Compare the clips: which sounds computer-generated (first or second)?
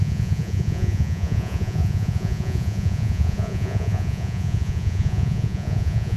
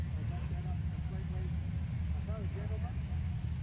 first